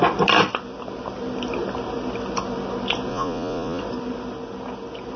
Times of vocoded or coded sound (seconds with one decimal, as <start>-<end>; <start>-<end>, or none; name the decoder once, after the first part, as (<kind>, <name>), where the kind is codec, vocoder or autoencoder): 3.1-3.8 (vocoder, Vocos)